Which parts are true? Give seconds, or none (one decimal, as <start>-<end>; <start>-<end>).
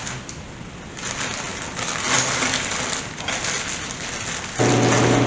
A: 0.0-5.3